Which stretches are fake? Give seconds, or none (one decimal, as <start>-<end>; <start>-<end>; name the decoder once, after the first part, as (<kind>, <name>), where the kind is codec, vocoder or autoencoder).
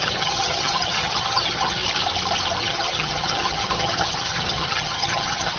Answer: 0.0-1.8 (vocoder, HiFi-GAN); 2.6-5.6